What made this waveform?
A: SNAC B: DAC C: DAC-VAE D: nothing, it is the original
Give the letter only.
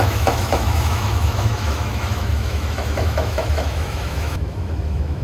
C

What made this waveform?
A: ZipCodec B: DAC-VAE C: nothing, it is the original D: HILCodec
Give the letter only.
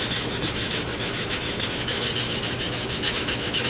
B